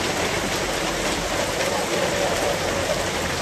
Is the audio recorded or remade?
recorded